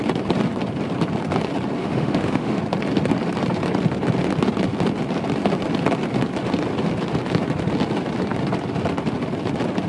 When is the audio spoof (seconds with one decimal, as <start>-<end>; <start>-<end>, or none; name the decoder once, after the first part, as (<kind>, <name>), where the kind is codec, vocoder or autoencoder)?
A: 1.8-2.6 (autoencoder, DAC-VAE)